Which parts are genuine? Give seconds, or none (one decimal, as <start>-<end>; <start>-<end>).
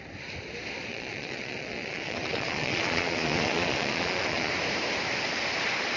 0.0-0.9; 4.5-6.0